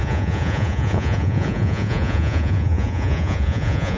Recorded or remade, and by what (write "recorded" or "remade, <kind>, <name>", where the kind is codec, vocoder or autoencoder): remade, vocoder, Vocos